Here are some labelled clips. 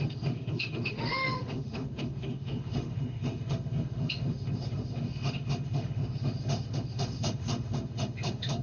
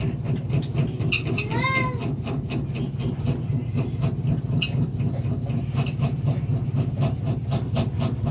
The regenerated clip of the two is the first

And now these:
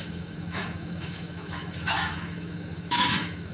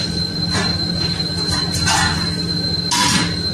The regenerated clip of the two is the first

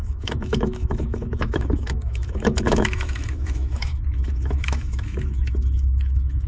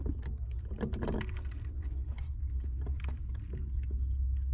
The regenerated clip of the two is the first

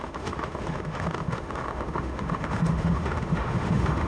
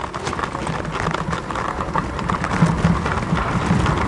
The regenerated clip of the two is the first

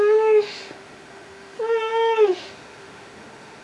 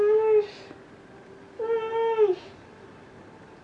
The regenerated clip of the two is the first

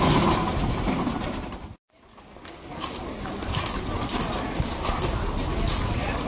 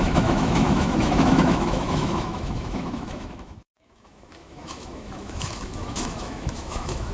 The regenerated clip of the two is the second